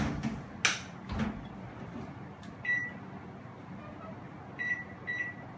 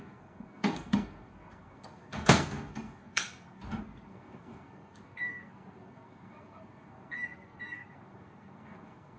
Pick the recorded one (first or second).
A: first